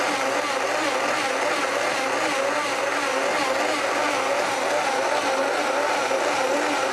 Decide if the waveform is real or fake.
real